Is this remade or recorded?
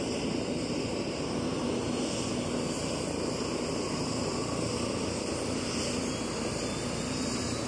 recorded